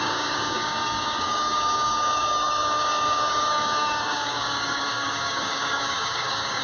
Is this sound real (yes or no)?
no